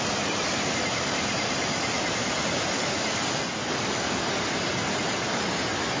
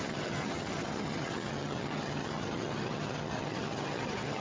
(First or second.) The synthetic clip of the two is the second